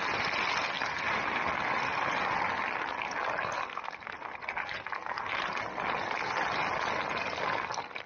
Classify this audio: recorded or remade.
recorded